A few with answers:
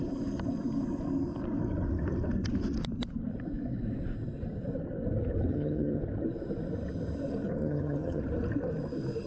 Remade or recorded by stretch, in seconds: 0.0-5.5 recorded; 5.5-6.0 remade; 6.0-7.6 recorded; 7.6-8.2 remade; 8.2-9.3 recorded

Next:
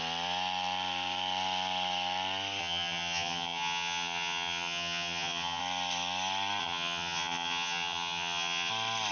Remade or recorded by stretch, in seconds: 0.0-2.6 recorded; 2.6-5.6 remade; 5.6-6.6 recorded; 6.6-8.7 remade; 8.7-9.1 recorded

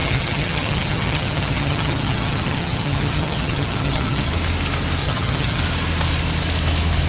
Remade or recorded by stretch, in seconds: 0.0-4.3 remade; 4.3-5.0 recorded; 5.0-5.6 remade; 5.6-7.1 recorded

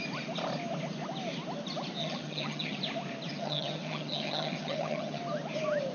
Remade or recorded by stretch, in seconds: 0.0-2.0 recorded; 2.0-2.8 remade; 2.8-3.3 recorded; 3.3-5.2 remade; 5.2-5.9 recorded

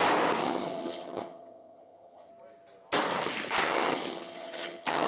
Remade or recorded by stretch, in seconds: 0.0-0.4 recorded; 0.4-2.3 remade; 2.3-3.6 recorded; 3.6-5.1 remade

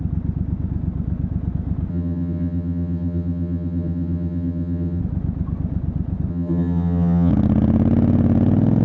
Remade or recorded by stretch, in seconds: 0.0-1.9 recorded; 1.9-5.0 remade; 5.0-6.3 recorded; 6.3-7.3 remade; 7.3-8.8 recorded

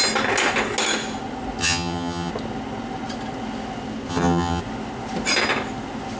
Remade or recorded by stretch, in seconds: 0.0-1.6 recorded; 1.6-2.3 remade; 2.3-4.1 recorded; 4.1-4.6 remade; 4.6-6.2 recorded